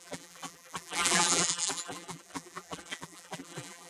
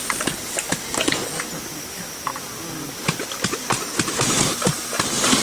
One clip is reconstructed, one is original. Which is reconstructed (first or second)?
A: first